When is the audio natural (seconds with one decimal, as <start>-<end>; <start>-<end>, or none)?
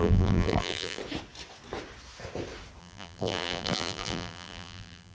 1.0-2.8